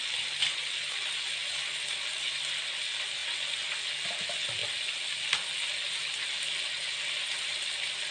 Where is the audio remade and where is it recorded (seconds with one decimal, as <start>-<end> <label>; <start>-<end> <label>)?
0.0-8.1 recorded